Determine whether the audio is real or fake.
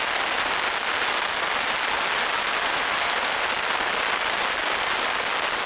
real